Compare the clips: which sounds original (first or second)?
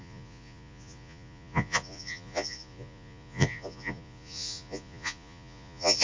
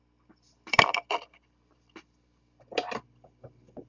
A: second